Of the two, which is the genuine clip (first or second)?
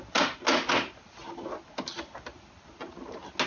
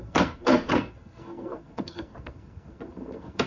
first